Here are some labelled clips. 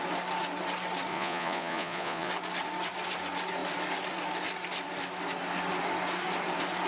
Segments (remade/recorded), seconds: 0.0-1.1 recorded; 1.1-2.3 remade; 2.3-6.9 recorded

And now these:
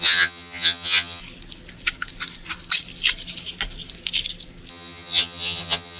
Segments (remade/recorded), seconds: 0.0-1.2 remade; 1.2-4.7 recorded; 4.7-6.0 remade

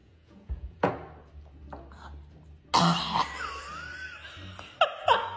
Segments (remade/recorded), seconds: 0.0-0.9 remade; 0.9-5.4 recorded

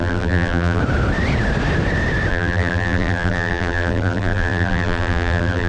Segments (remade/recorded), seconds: 0.0-0.8 remade; 0.8-2.3 recorded; 2.3-5.7 remade

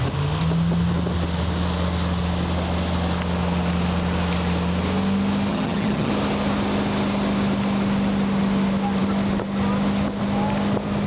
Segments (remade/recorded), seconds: 0.0-5.5 recorded; 5.5-6.1 remade; 6.1-11.1 recorded

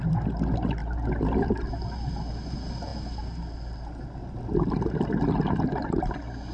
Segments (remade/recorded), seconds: 0.0-6.5 recorded